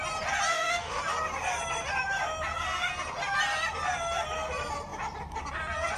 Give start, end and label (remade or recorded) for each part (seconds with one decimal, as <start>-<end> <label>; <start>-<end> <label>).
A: 0.0-0.5 recorded; 0.5-1.0 remade; 1.0-6.0 recorded

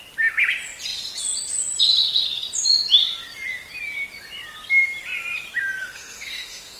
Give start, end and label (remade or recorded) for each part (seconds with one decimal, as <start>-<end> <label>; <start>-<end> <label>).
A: 0.0-5.8 recorded; 5.8-6.8 remade

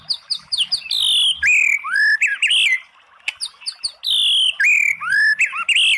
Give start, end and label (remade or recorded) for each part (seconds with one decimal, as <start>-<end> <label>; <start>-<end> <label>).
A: 0.0-6.0 recorded

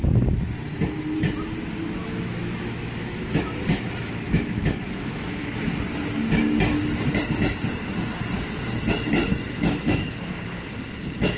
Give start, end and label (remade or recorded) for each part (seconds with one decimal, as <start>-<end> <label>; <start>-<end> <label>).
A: 0.0-2.0 recorded; 2.0-5.4 remade; 5.4-9.3 recorded; 9.3-10.2 remade; 10.2-11.4 recorded

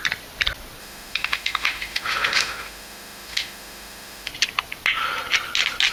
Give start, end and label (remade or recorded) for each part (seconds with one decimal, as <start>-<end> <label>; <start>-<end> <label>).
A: 0.0-0.8 recorded; 0.8-4.3 remade; 4.3-5.9 recorded